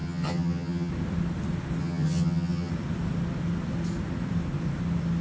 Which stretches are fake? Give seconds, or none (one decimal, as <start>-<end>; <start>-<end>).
0.0-0.9; 1.8-2.7